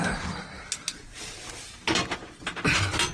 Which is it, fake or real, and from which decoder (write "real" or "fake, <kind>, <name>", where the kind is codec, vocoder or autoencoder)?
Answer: real